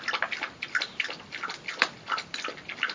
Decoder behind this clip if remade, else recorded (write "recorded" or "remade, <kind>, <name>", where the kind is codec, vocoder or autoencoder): recorded